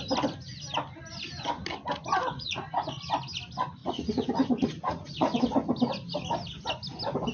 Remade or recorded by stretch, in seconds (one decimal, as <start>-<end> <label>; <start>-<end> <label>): 0.0-2.1 recorded; 2.1-3.0 remade; 3.0-3.8 recorded; 3.8-5.4 remade; 5.4-7.3 recorded